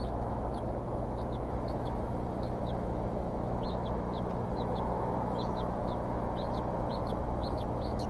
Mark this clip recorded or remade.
remade